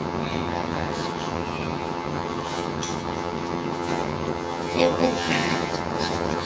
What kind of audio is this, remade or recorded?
remade